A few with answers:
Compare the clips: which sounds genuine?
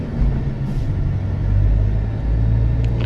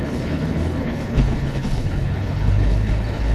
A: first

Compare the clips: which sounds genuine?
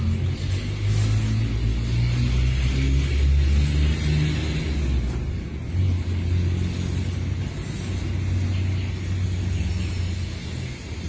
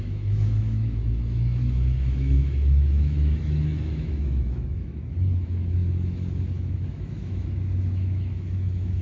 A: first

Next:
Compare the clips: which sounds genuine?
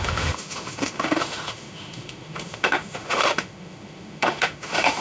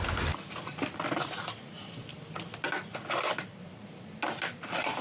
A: second